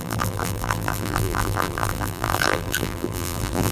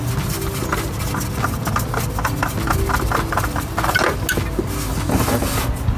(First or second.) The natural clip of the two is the second